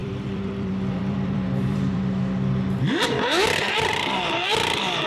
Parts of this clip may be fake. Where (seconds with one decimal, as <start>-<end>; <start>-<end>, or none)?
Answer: 0.0-2.0